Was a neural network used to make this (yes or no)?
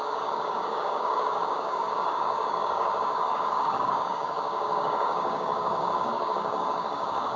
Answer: yes